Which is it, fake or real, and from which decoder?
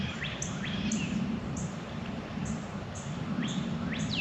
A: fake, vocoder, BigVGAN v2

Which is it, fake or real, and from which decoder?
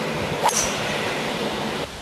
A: fake, vocoder, BigVGAN v2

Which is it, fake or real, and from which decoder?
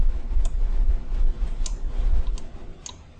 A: real